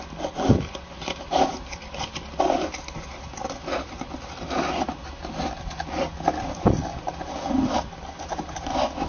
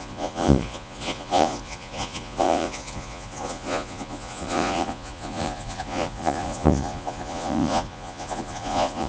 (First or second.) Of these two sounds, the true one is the first